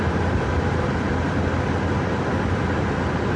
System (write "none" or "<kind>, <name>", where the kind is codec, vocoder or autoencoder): none